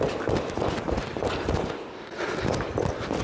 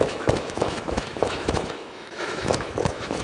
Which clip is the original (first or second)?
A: first